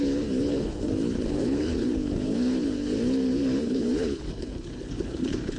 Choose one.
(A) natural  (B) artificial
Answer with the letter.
B